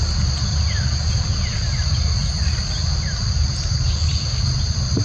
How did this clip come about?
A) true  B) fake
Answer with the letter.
A